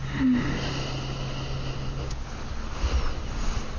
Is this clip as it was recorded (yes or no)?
yes